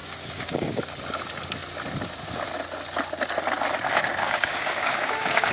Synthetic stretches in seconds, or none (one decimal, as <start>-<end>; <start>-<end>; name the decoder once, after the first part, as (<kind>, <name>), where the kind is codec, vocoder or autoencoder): 0.0-0.8 (codec, DAC); 4.2-5.5